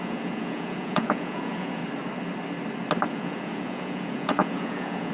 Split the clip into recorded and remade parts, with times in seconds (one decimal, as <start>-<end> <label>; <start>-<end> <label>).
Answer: 0.0-1.8 remade; 1.8-3.1 recorded; 3.1-5.1 remade